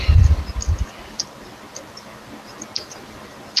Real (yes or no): yes